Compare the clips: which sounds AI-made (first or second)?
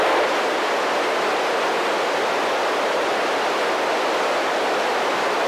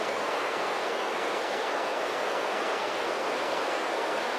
second